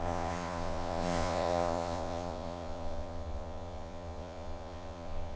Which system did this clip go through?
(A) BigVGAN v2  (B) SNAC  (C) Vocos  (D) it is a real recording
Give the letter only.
C